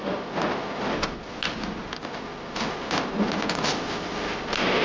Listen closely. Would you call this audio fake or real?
real